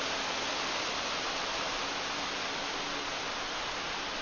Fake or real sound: real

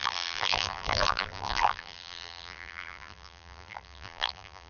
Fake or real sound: fake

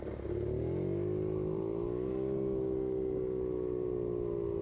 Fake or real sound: real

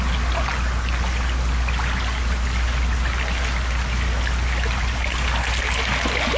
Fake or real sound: real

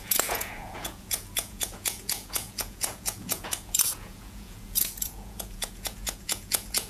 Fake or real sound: fake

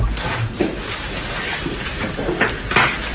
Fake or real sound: real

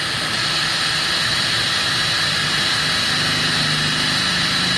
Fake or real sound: real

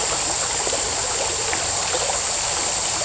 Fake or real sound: real